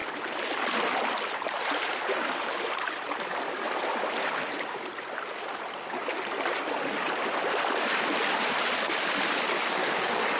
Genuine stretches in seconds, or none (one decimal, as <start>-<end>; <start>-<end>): 0.0-10.4